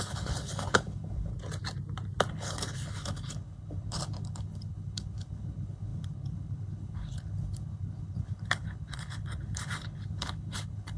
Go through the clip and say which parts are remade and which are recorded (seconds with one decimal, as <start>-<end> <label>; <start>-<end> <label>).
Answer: 0.0-1.3 remade; 1.3-2.3 recorded; 2.3-11.0 remade